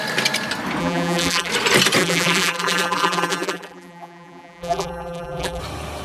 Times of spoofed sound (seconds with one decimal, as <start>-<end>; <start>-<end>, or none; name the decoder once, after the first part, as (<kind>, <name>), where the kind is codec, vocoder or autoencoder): 0.8-1.5 (vocoder, BigVGAN v2); 2.0-5.6